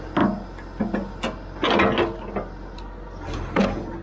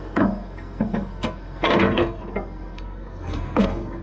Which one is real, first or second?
first